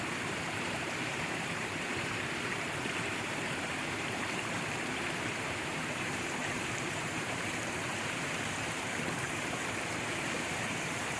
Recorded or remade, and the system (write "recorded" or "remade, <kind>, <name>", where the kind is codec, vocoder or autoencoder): remade, vocoder, BigVGAN v2